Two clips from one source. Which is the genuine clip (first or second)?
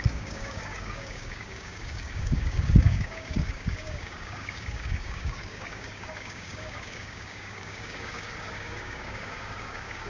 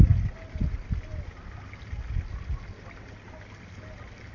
second